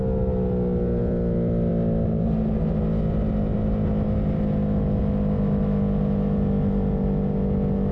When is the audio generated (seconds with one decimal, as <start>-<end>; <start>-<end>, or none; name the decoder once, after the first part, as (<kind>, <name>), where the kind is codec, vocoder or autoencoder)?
1.0-1.7 (vocoder, BigVGAN v2)